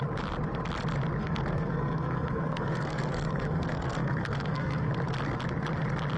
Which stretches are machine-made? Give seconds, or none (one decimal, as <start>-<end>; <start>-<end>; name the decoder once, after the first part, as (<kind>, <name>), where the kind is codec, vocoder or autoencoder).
1.2-4.9 (codec, SNAC)